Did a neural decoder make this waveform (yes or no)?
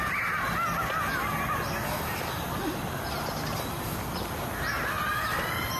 no